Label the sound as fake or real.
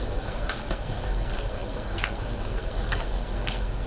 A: fake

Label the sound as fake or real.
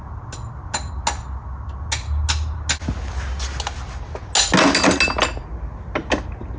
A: real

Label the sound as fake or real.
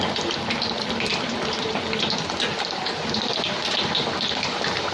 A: real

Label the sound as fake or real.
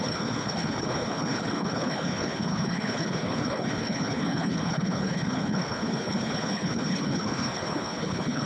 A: fake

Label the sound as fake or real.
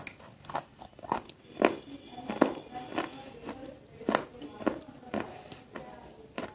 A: real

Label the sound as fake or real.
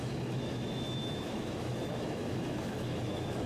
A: fake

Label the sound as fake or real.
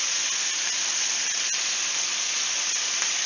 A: real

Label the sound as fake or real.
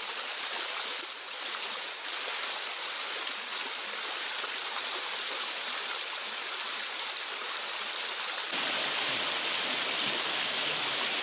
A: real